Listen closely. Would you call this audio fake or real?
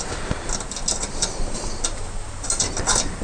real